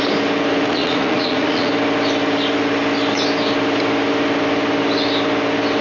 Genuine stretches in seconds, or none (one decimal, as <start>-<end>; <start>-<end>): 0.0-0.7; 1.7-5.8